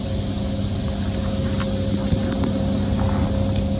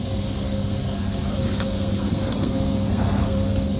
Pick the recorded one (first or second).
first